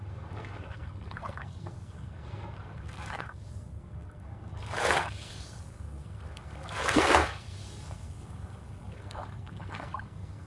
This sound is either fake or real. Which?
fake